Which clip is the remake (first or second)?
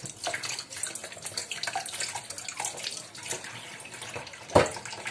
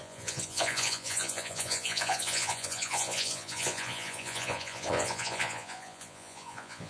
second